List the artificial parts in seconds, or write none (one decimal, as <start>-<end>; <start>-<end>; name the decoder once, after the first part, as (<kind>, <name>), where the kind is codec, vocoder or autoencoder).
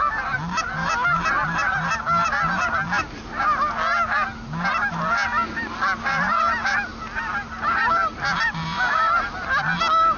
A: 6.9-9.6 (vocoder, BigVGAN v2)